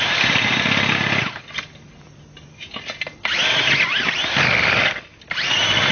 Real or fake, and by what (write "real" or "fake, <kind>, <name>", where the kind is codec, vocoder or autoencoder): real